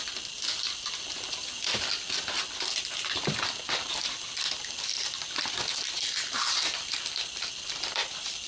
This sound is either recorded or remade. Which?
recorded